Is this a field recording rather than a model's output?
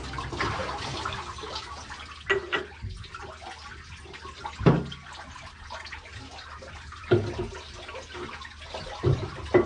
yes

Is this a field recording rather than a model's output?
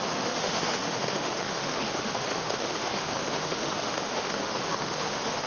no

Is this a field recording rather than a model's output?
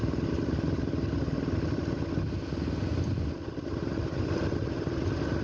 yes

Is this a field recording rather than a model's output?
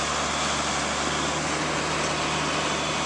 yes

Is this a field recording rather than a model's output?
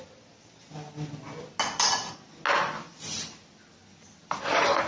yes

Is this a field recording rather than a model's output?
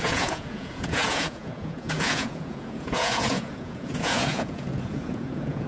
no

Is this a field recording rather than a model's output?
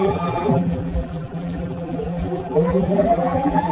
no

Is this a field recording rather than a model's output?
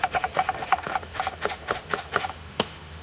no